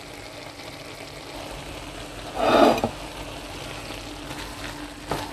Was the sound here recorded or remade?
recorded